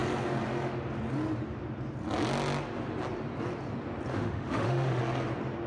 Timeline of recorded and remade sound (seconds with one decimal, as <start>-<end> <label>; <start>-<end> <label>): 0.0-4.1 recorded; 4.1-5.0 remade; 5.0-5.7 recorded